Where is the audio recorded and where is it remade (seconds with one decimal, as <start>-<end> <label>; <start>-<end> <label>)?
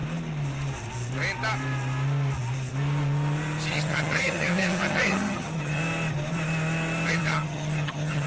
0.0-3.7 recorded; 3.7-5.8 remade; 5.8-7.1 recorded; 7.1-8.3 remade